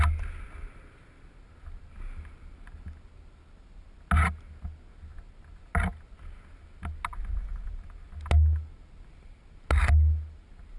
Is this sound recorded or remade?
recorded